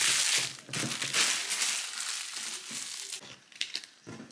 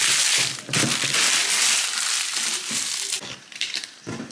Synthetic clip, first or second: second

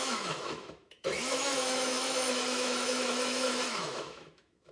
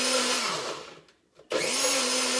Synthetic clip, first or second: first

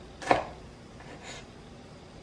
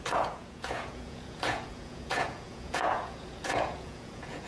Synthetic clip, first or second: second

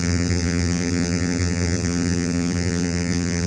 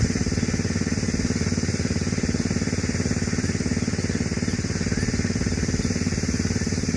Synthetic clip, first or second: first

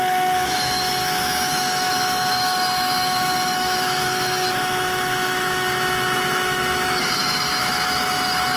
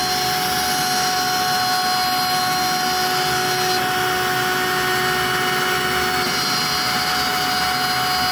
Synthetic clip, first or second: first